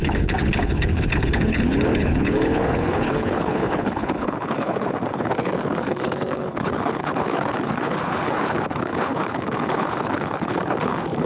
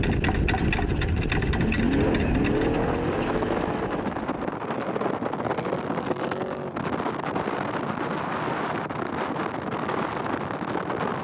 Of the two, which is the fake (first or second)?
first